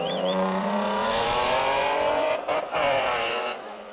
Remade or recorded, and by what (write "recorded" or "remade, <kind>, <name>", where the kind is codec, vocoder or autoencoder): remade, vocoder, Vocos